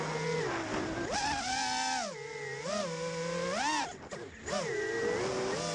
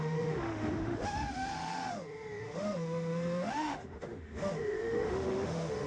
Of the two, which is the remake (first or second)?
second